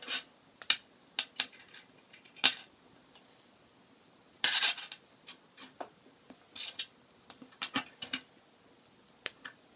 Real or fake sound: real